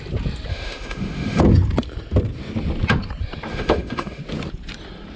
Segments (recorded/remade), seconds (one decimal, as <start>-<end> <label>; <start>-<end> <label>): 0.0-0.5 recorded; 0.5-1.4 remade; 1.4-3.5 recorded; 3.5-4.2 remade; 4.2-5.2 recorded